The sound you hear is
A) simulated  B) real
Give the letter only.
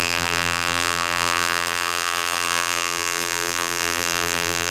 A